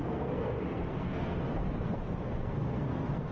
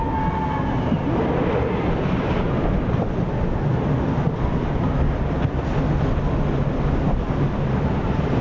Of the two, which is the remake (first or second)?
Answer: first